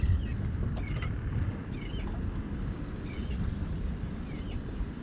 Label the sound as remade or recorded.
recorded